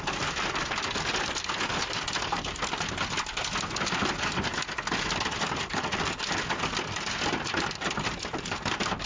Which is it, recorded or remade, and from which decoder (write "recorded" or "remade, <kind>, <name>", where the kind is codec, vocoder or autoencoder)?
recorded